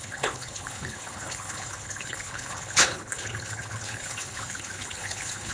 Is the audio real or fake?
fake